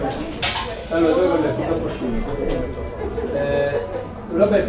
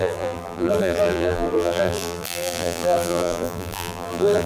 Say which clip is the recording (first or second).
first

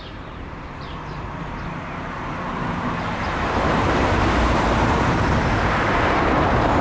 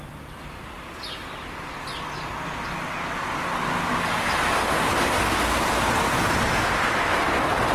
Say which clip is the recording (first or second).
second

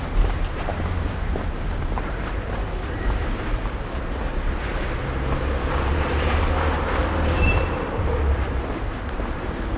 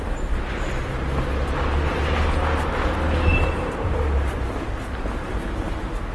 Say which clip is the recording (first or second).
second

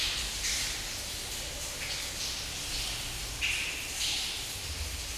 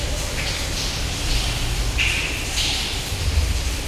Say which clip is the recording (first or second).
first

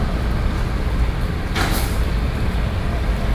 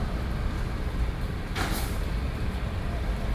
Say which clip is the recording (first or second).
first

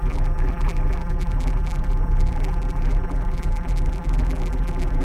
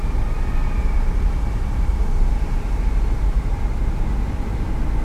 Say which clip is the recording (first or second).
second